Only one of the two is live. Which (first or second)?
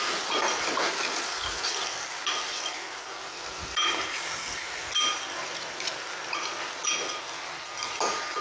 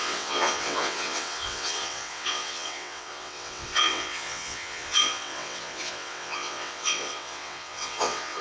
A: first